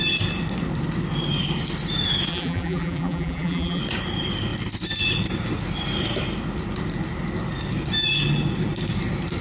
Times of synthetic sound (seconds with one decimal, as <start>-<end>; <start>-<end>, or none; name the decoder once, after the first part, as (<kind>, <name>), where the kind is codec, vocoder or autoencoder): 2.3-3.8 (vocoder, BigVGAN v2)

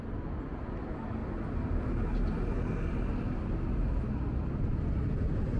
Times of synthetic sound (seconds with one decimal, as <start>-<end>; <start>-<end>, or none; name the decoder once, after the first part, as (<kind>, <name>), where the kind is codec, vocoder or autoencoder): none

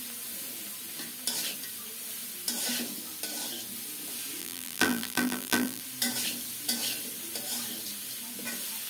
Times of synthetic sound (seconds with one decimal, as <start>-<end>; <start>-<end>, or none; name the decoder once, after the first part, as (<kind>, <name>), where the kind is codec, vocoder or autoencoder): 4.4-5.8 (vocoder, BigVGAN v2)